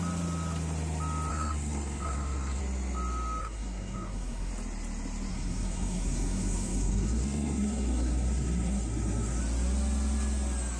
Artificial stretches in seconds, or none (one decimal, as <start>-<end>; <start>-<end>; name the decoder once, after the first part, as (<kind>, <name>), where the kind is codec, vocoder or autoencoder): 1.3-2.6 (codec, SNAC); 3.4-4.5; 5.3-9.4